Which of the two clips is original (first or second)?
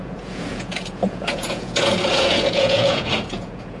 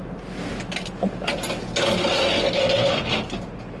second